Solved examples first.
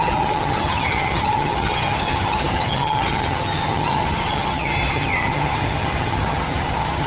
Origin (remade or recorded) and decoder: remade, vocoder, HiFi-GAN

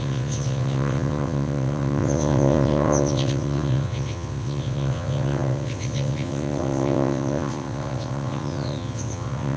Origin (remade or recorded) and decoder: remade, vocoder, WaveNeXt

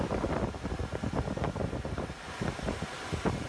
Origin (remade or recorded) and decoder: recorded